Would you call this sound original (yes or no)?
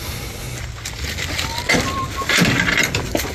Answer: yes